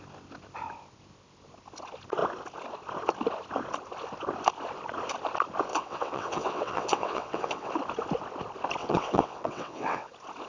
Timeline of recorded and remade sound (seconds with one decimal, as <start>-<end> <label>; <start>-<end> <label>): 0.0-5.7 recorded; 5.7-7.7 remade; 7.7-8.8 recorded; 8.8-10.1 remade; 10.1-10.5 recorded